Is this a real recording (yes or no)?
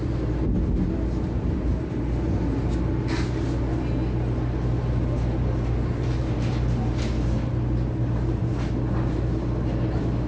yes